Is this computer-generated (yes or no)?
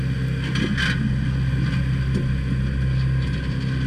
no